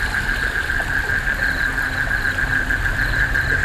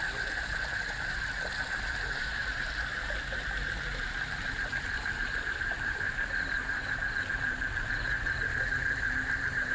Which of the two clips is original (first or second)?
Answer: first